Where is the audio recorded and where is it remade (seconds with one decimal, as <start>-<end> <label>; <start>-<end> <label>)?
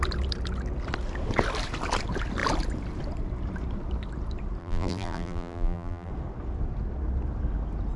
0.0-4.6 recorded; 4.6-6.1 remade; 6.1-8.0 recorded